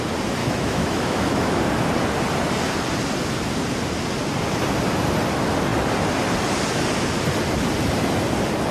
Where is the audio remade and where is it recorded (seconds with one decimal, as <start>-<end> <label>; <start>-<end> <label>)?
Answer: 0.0-0.4 recorded; 0.4-1.6 remade; 1.6-8.7 recorded